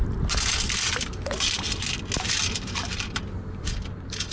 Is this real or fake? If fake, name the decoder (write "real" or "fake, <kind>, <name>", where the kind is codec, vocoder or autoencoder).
real